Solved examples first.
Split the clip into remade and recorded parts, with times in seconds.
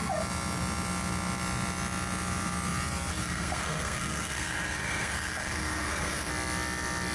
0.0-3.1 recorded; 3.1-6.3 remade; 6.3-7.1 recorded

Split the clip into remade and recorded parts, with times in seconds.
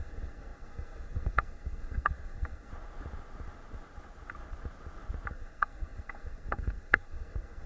0.0-2.7 remade; 2.7-5.3 recorded; 5.3-7.7 remade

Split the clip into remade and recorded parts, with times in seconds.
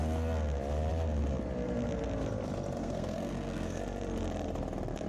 0.0-2.8 recorded; 2.8-3.8 remade; 3.8-5.1 recorded